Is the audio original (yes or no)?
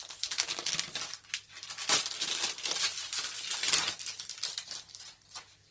yes